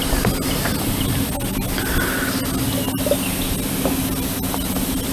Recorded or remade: recorded